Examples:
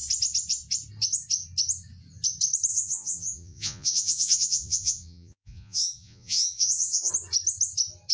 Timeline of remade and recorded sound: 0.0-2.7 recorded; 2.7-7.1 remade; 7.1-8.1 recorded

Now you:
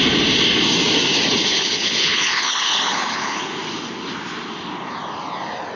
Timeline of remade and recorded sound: 0.0-1.4 recorded; 1.4-3.5 remade; 3.5-5.8 recorded